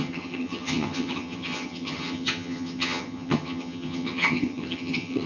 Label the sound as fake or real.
fake